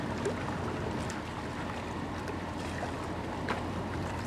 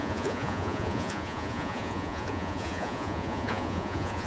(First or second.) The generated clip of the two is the second